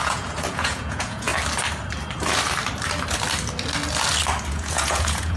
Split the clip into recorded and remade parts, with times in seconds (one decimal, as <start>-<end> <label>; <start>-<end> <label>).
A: 0.0-1.3 remade; 1.3-4.5 recorded; 4.5-5.4 remade